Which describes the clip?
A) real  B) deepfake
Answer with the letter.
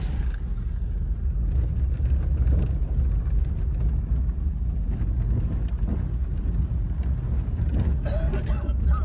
A